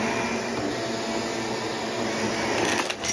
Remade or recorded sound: recorded